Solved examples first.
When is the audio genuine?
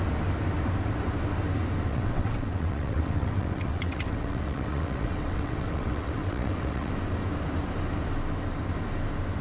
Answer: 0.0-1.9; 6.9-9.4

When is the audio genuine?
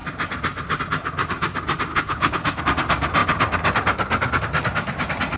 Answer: 0.0-1.9; 2.6-5.4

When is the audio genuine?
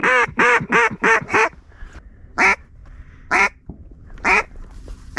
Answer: 1.7-2.8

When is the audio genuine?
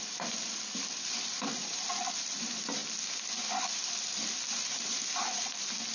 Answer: none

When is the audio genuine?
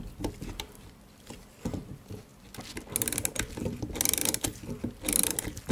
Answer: 0.0-5.7